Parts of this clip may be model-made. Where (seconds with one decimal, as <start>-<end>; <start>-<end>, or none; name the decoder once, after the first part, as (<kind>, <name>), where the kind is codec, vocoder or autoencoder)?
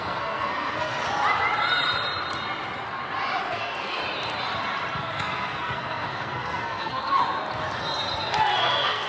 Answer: 0.0-1.0 (codec, SNAC); 3.4-4.0; 5.1-7.2; 8.4-9.1